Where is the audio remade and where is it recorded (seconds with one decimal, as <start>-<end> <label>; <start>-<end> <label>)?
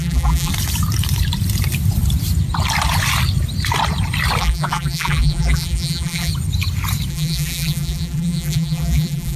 0.0-0.5 remade; 0.5-4.4 recorded; 4.4-6.3 remade; 6.3-7.1 recorded; 7.1-9.4 remade